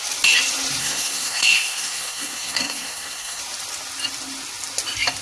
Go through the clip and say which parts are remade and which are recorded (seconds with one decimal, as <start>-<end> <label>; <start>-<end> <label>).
0.0-0.8 recorded; 0.8-3.4 remade; 3.4-5.2 recorded